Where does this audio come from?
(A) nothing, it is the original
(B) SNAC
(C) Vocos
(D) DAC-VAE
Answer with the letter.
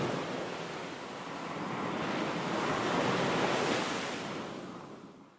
A